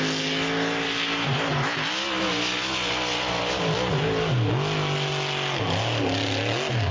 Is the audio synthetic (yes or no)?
no